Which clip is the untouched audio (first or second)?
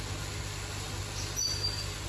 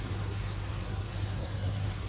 first